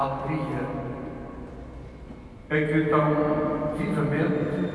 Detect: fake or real real